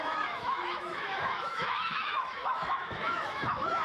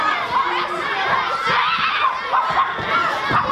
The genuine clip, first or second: second